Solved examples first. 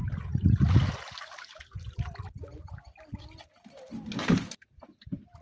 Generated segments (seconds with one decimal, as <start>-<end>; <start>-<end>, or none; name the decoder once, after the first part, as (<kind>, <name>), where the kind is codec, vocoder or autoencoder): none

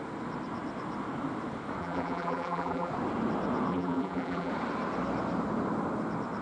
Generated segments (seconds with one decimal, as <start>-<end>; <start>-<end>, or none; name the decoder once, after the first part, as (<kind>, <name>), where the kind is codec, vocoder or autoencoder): 1.8-2.9 (vocoder, BigVGAN v2); 3.7-4.5

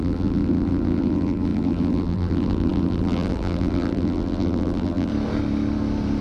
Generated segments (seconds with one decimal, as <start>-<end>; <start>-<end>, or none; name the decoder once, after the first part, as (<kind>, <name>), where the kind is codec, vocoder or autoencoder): 0.0-5.1 (vocoder, BigVGAN v2)

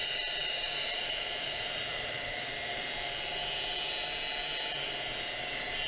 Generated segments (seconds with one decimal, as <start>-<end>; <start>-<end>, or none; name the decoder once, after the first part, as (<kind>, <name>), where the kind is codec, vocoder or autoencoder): 0.0-3.4 (vocoder, BigVGAN v2)

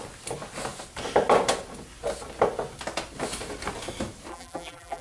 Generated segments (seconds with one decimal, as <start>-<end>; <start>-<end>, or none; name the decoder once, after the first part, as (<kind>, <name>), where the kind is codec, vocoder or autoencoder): 4.3-5.0 (vocoder, BigVGAN v2)

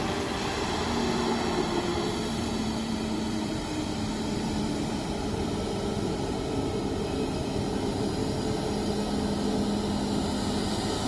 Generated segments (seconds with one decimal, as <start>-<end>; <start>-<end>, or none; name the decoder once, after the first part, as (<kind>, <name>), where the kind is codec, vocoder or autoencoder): 1.9-5.6 (vocoder, BigVGAN v2)